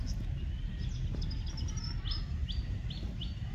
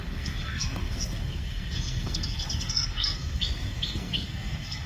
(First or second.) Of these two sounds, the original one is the first